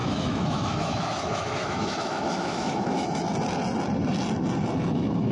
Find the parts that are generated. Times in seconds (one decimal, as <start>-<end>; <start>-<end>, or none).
0.0-3.2